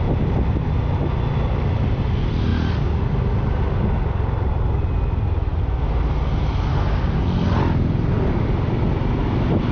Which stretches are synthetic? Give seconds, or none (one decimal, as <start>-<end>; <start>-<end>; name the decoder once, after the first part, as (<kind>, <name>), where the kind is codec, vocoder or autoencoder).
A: none